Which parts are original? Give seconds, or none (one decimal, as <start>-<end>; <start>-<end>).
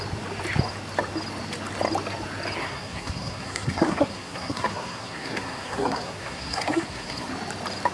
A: 0.0-2.6; 7.3-7.9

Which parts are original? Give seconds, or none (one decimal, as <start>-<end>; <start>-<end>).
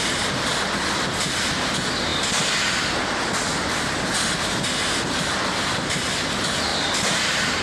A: 0.0-0.5; 1.2-6.7